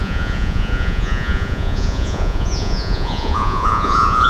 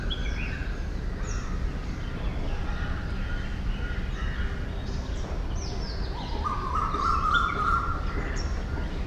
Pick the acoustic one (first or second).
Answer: second